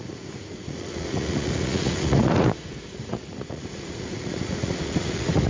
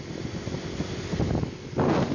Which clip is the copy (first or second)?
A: first